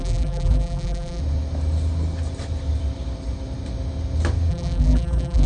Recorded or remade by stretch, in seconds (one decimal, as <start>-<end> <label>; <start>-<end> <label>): 0.0-1.2 remade; 1.2-4.5 recorded; 4.5-5.5 remade